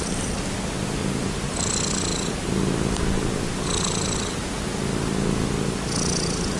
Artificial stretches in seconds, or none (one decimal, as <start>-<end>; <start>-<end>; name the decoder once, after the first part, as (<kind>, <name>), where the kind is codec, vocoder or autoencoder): none